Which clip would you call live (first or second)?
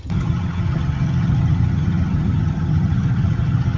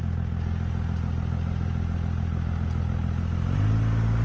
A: second